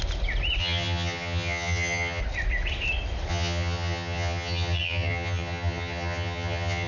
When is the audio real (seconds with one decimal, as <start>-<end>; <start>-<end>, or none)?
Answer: 0.0-0.6; 2.2-3.3